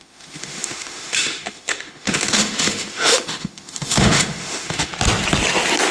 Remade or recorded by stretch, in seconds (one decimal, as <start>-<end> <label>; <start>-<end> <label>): 0.0-4.9 remade; 4.9-5.9 recorded